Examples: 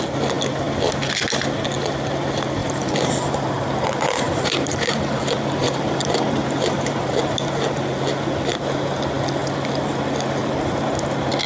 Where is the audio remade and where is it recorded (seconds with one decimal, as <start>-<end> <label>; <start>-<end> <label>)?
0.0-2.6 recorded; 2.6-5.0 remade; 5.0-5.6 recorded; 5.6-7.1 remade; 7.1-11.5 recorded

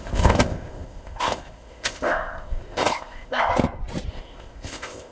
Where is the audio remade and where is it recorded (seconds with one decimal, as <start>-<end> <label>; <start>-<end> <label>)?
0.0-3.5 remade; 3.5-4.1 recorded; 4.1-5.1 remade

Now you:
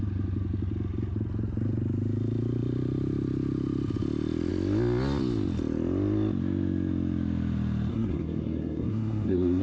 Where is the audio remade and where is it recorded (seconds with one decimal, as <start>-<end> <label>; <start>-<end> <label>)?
0.0-7.9 recorded; 7.9-9.6 remade

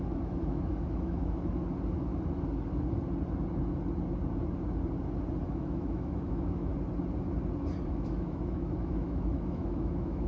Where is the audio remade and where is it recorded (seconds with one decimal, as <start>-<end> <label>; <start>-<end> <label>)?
0.0-1.6 remade; 1.6-5.4 recorded; 5.4-6.7 remade; 6.7-7.9 recorded; 7.9-10.3 remade

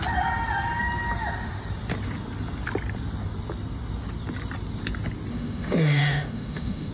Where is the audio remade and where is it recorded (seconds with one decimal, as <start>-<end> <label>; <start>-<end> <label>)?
0.0-5.3 recorded; 5.3-6.9 remade